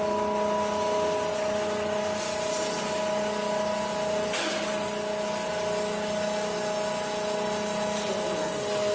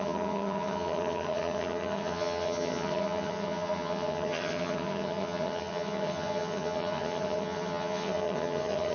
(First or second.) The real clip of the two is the first